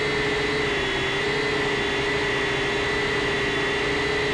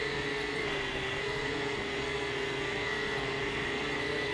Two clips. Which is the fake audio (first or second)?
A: second